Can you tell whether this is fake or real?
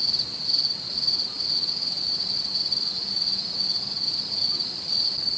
real